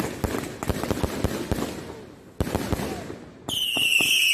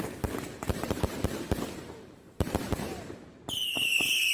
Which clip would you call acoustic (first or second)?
first